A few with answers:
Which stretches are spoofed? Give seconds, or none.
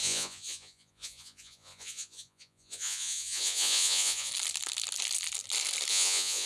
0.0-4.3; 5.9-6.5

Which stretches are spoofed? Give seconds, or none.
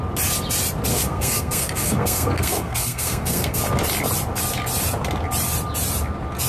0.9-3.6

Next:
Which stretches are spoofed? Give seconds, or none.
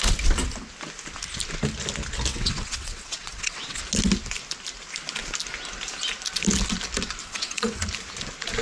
2.3-3.8; 7.2-7.8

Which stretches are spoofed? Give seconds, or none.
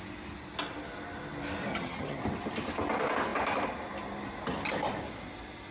1.7-2.2